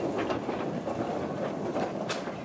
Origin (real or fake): real